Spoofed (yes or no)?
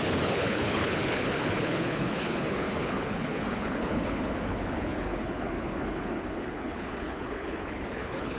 yes